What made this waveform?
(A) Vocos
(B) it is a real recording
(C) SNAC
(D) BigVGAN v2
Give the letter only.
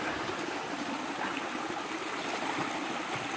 B